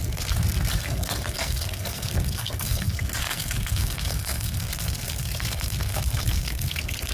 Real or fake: fake